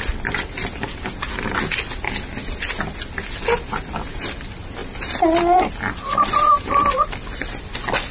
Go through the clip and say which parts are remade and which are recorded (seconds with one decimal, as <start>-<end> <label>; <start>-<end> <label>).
0.0-8.1 recorded